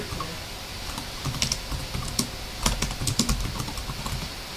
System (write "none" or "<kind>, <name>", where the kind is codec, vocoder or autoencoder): none